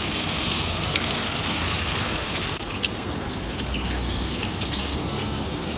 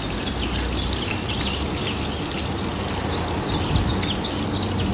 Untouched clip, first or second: second